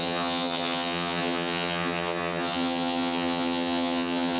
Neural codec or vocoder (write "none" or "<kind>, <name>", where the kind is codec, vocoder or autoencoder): vocoder, HiFi-GAN